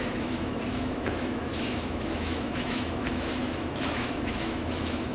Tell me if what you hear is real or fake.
fake